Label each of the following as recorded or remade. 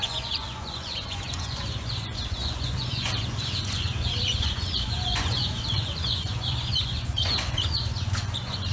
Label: remade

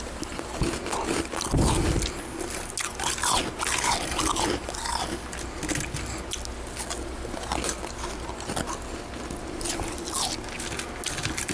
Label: recorded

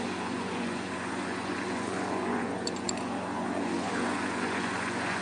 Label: remade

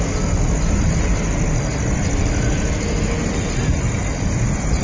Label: recorded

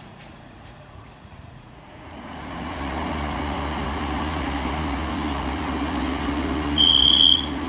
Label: remade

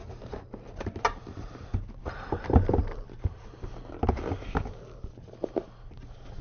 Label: recorded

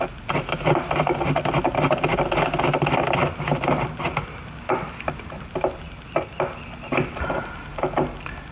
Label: recorded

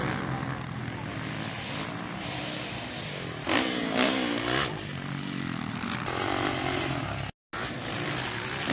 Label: recorded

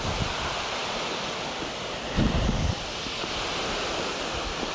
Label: recorded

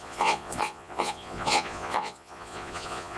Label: remade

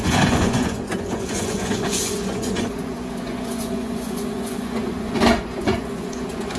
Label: remade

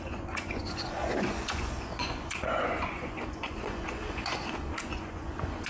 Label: remade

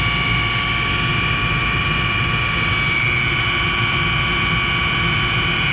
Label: recorded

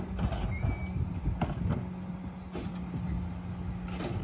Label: recorded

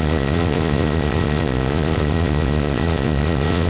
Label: remade